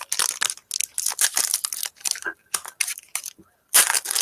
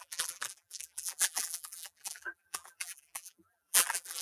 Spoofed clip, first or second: second